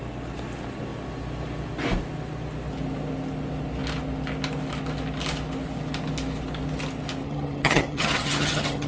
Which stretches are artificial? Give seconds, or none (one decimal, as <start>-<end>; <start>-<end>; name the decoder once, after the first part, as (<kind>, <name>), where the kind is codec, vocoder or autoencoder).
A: 7.2-8.9 (vocoder, HiFi-GAN)